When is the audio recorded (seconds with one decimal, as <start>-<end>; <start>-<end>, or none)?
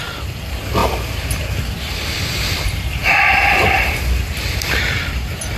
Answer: 0.8-2.5